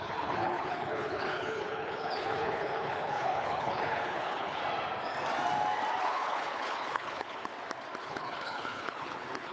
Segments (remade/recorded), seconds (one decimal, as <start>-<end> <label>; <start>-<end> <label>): 0.0-4.6 remade; 4.6-6.0 recorded; 6.0-7.5 remade; 7.5-8.0 recorded; 8.0-9.5 remade